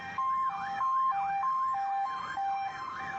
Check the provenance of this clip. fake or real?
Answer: fake